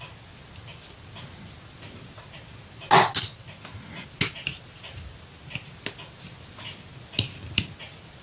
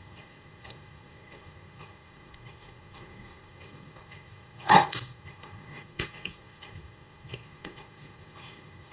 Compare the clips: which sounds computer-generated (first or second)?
second